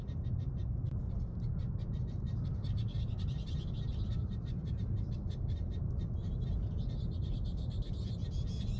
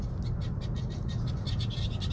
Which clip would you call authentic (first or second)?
second